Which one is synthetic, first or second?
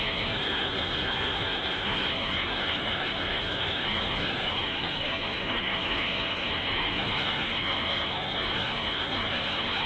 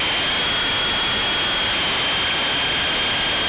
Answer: first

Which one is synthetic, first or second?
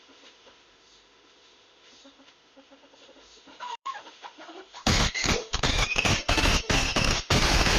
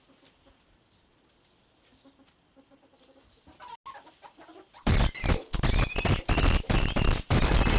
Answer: first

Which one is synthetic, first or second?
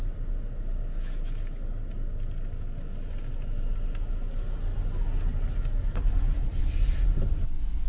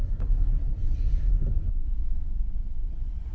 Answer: second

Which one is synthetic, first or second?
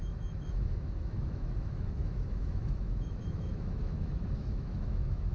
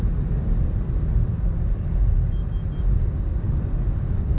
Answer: first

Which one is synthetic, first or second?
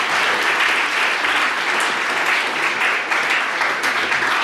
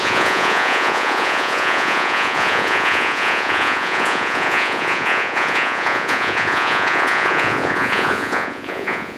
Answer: second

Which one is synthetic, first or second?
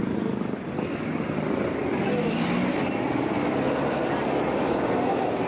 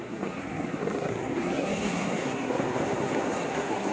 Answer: second